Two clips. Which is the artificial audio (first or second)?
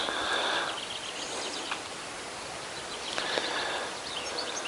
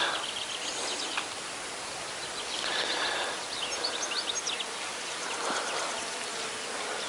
first